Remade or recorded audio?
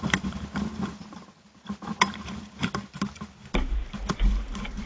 recorded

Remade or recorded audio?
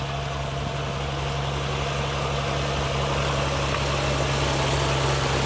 recorded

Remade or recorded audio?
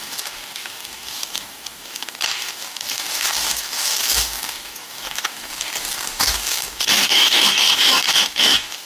remade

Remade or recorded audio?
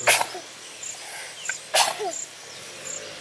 recorded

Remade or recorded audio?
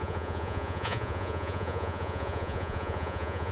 remade